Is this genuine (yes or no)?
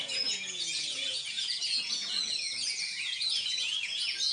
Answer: no